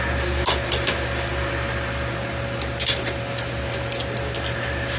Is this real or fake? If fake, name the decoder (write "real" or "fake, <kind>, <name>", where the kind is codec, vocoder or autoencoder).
real